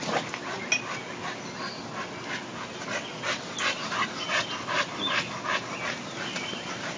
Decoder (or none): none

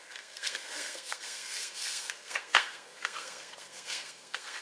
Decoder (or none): codec, SNAC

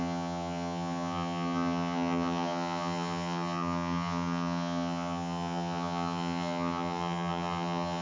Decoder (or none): vocoder, HiFi-GAN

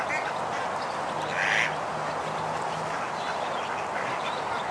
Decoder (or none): none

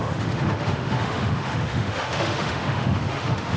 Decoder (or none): autoencoder, DAC-VAE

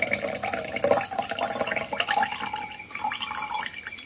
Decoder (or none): none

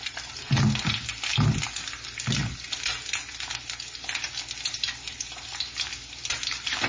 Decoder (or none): none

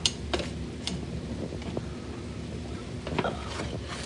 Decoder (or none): none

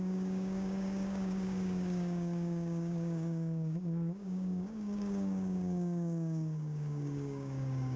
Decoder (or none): codec, DAC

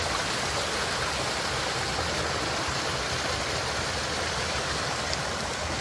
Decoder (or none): none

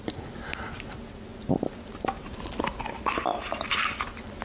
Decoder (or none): none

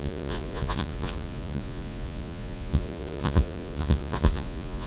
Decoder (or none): vocoder, Vocos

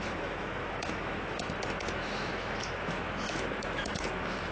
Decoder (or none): autoencoder, DAC-VAE